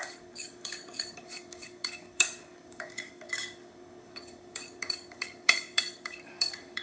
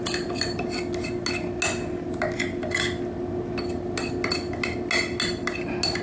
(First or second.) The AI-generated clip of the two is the first